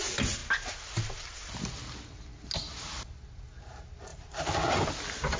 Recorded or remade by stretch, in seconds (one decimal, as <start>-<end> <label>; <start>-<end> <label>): 0.0-5.4 recorded